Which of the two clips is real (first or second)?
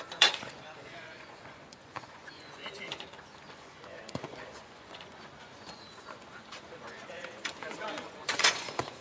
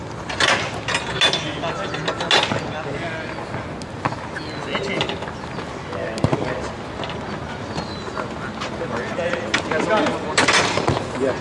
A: second